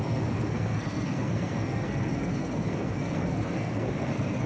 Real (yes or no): no